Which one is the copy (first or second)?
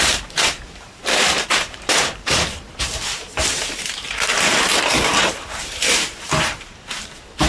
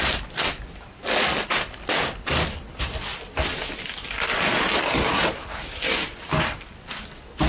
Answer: first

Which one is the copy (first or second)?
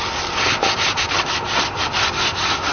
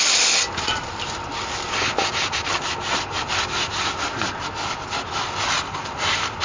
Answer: first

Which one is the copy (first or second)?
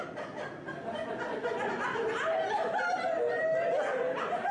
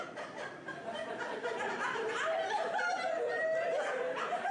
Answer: second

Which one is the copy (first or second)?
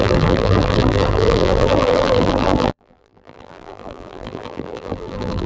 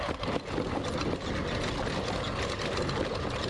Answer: first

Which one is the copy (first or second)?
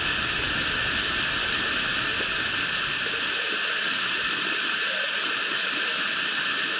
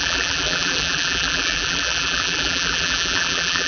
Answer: second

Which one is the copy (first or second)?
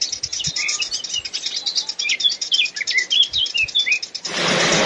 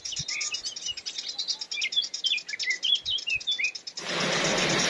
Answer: first